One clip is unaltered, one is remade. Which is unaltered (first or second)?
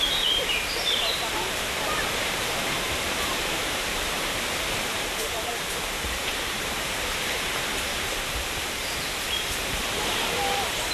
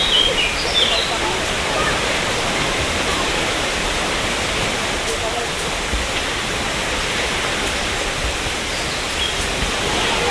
second